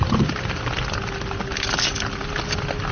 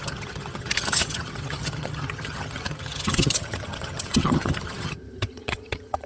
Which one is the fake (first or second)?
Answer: second